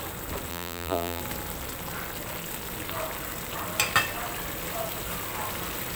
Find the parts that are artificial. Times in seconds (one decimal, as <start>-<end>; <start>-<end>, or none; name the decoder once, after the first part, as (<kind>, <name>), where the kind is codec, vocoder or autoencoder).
0.5-1.2 (vocoder, BigVGAN v2)